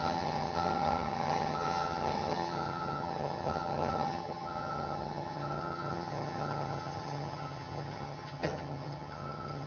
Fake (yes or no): yes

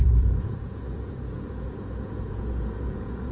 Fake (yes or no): yes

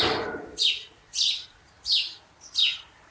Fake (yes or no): yes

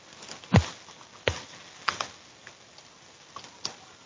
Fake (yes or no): no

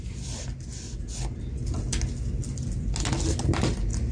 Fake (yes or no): no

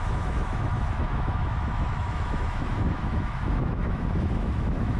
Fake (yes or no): yes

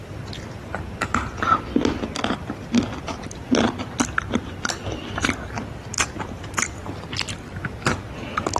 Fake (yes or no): no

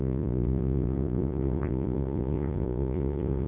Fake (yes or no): yes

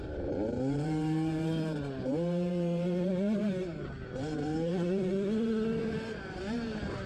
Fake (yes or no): yes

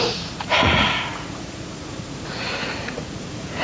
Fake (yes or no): yes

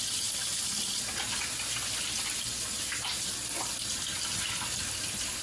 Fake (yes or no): no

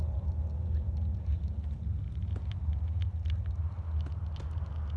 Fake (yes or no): no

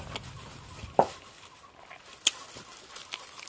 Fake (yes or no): no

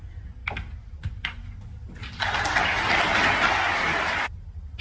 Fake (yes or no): no